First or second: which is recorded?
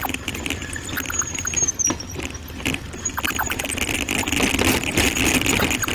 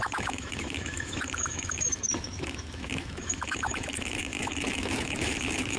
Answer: first